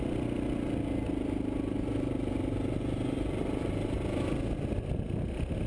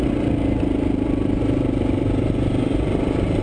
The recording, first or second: first